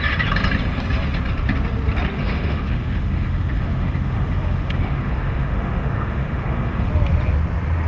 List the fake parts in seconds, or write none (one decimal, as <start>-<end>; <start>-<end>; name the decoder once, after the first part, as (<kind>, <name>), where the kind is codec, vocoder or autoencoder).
2.2-6.9 (autoencoder, DAC-VAE)